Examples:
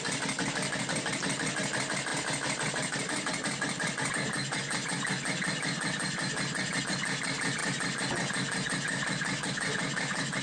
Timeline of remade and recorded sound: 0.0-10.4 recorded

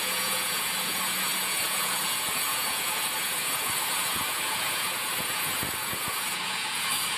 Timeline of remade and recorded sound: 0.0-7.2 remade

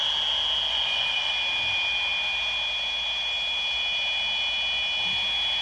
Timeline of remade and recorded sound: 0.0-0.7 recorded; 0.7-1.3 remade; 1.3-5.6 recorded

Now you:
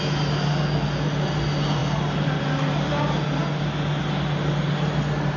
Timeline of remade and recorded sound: 0.0-5.4 recorded

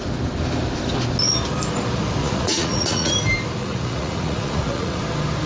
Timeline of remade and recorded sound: 0.0-2.2 recorded; 2.2-3.1 remade; 3.1-3.6 recorded; 3.6-5.0 remade; 5.0-5.5 recorded